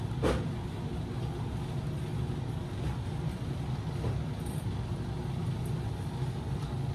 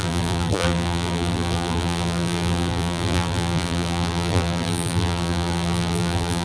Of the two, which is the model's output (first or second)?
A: second